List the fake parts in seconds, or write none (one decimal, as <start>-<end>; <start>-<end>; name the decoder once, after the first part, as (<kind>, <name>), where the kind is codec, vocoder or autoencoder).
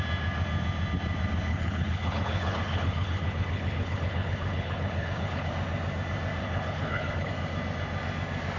1.5-5.5 (codec, HILCodec); 6.4-7.3